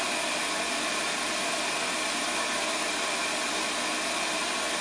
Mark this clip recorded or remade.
recorded